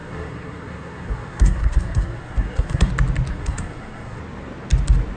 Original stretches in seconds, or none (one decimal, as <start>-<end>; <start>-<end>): 2.9-3.3; 4.2-5.2